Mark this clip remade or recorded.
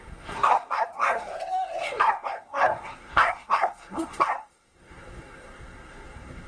remade